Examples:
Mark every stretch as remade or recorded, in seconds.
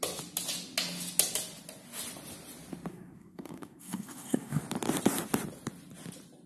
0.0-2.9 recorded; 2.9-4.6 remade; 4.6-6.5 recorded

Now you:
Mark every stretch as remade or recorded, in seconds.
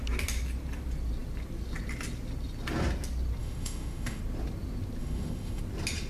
0.0-3.4 recorded; 3.4-4.2 remade; 4.2-5.0 recorded; 5.0-5.6 remade; 5.6-6.1 recorded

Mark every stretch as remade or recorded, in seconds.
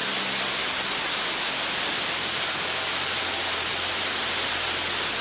0.0-5.2 recorded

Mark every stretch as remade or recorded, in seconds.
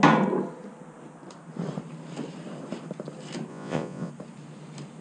0.0-3.5 recorded; 3.5-4.1 remade; 4.1-5.0 recorded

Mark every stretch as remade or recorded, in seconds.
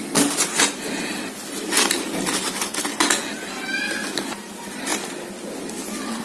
0.0-6.2 recorded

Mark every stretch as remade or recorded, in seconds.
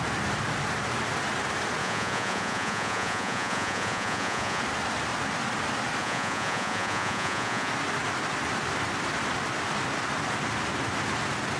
0.0-1.8 recorded; 1.8-4.6 remade; 4.6-6.0 recorded; 6.0-7.7 remade; 7.7-11.6 recorded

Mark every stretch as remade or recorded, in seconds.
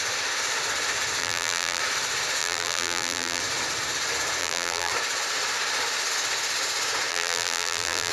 0.0-1.2 recorded; 1.2-1.8 remade; 1.8-2.4 recorded; 2.4-3.4 remade; 3.4-4.4 recorded; 4.4-4.9 remade; 4.9-7.1 recorded; 7.1-8.1 remade